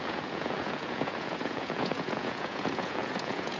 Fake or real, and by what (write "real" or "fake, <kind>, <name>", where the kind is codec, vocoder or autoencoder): fake, vocoder, Vocos